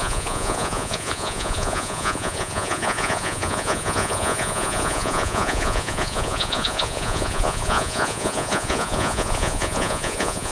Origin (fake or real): fake